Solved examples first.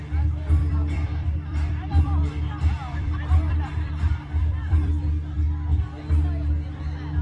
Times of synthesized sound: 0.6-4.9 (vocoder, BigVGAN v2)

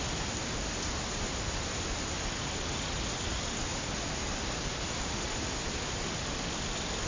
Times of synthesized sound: none

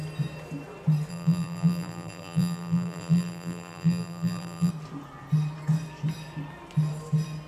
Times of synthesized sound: 1.1-4.7 (vocoder, BigVGAN v2)

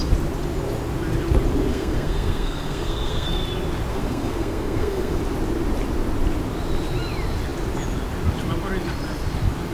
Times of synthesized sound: 1.7-3.4 (codec, SNAC); 3.9-5.2

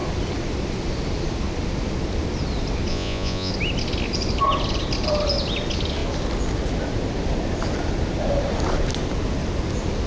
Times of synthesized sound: 2.9-3.5 (vocoder, Vocos)

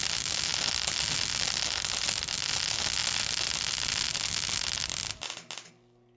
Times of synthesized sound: none

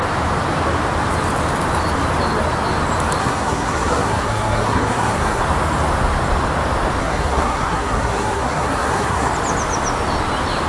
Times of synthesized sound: 3.2-5.4 (codec, SNAC); 7.0-9.3

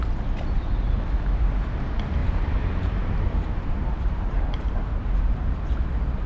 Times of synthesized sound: 2.2-5.3 (vocoder, BigVGAN v2)